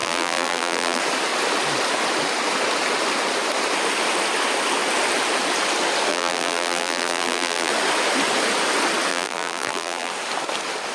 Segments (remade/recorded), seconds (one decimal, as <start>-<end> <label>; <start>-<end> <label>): 0.0-1.0 remade; 1.0-6.1 recorded; 6.1-7.7 remade; 7.7-9.1 recorded; 9.1-10.1 remade; 10.1-10.9 recorded